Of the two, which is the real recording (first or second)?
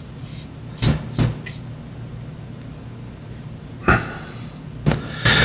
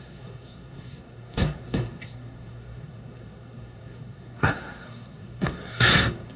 first